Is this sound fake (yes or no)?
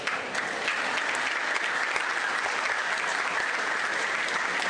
no